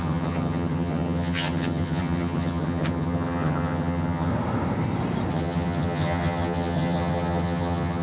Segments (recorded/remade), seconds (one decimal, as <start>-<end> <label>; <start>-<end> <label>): 0.0-4.3 remade; 4.3-5.3 recorded; 5.3-8.0 remade